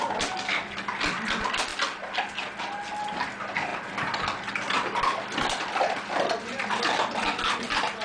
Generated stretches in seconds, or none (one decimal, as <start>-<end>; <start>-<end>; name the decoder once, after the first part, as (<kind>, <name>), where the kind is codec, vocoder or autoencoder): 0.0-1.7 (vocoder, BigVGAN v2); 2.6-8.0